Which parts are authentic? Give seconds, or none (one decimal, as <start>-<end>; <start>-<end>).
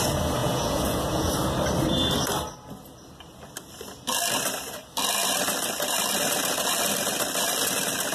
0.0-0.4; 1.3-8.1